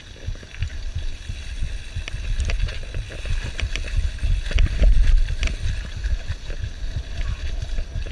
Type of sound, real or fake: real